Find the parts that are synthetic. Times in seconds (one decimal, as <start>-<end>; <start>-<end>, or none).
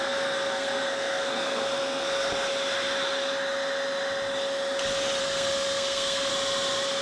0.0-2.3; 5.2-6.3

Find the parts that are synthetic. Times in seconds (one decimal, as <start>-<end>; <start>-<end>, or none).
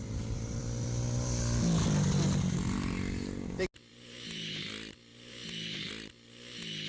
3.9-4.6; 5.1-5.9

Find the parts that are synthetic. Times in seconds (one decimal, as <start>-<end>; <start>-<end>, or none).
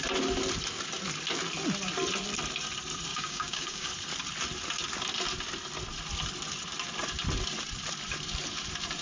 3.1-3.9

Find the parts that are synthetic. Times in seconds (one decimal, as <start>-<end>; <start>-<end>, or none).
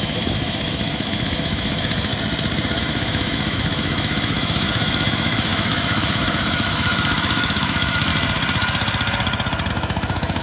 0.0-2.1; 2.8-8.1; 9.7-10.4